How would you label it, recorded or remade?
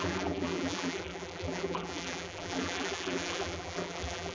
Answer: remade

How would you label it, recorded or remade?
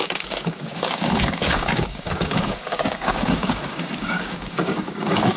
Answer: remade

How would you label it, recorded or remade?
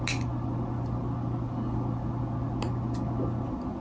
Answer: recorded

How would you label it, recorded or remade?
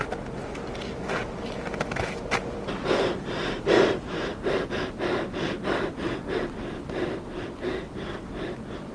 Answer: recorded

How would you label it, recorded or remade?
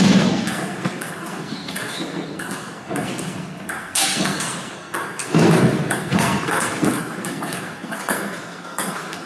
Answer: remade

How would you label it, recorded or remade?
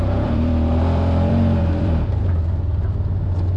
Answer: remade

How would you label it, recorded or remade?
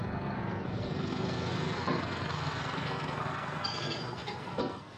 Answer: remade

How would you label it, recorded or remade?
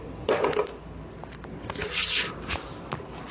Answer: recorded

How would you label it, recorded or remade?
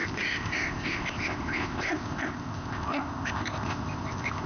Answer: remade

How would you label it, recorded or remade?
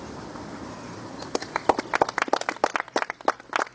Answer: recorded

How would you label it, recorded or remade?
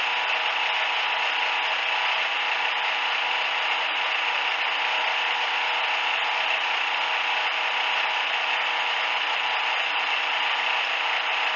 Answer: recorded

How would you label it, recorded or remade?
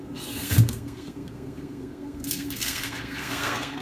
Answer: remade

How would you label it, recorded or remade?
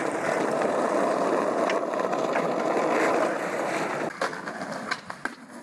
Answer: remade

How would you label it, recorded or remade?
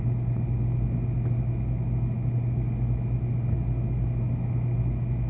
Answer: recorded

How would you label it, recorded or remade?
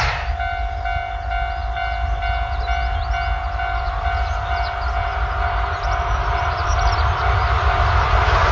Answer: recorded